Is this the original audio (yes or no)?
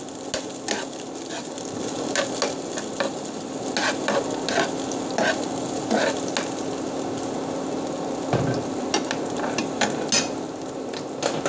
yes